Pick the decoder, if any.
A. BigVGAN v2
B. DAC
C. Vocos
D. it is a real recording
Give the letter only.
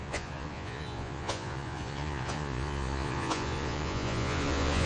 C